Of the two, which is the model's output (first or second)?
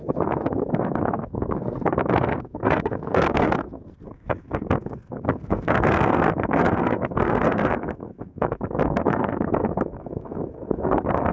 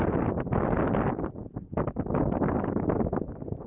first